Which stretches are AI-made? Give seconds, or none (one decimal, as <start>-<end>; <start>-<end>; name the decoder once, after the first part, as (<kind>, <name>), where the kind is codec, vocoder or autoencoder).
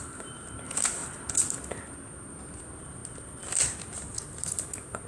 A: none